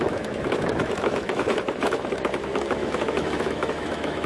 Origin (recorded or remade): remade